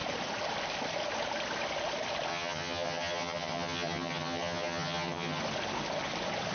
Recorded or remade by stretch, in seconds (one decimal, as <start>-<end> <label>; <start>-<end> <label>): 0.0-2.3 recorded; 2.3-5.4 remade; 5.4-6.5 recorded